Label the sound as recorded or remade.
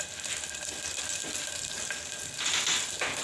recorded